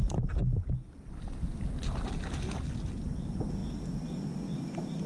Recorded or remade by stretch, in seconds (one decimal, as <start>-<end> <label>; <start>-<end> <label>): 0.0-0.4 remade; 0.4-3.2 recorded; 3.2-3.6 remade; 3.6-4.6 recorded; 4.6-5.1 remade